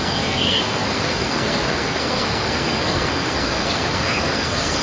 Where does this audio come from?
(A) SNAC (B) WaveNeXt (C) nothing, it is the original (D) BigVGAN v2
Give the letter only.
A